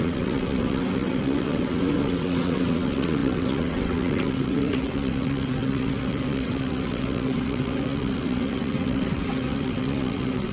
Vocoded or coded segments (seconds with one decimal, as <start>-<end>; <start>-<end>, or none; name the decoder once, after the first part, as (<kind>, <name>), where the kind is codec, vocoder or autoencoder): 0.0-10.5 (vocoder, WaveNeXt)